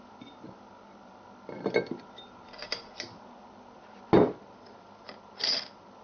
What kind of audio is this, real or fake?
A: real